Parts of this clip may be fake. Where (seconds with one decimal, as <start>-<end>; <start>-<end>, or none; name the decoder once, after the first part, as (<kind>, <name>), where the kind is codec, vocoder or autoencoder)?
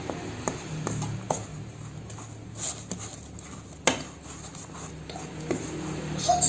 none